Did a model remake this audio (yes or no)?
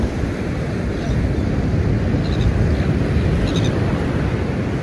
no